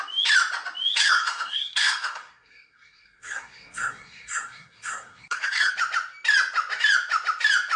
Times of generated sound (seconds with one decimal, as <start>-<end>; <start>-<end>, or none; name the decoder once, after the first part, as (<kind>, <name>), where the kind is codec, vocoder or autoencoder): 1.0-5.7 (codec, SNAC)